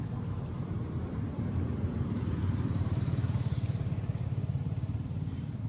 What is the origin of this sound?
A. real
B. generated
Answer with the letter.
B